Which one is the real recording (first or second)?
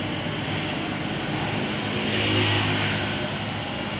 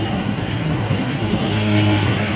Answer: first